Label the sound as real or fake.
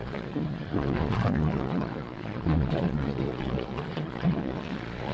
fake